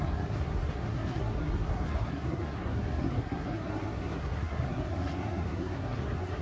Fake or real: fake